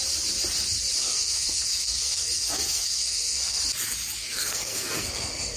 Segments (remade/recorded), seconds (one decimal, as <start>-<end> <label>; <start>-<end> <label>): 0.0-1.0 recorded; 1.0-3.6 remade; 3.6-4.2 recorded; 4.2-5.6 remade